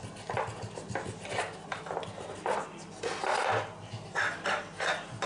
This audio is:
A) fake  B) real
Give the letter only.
B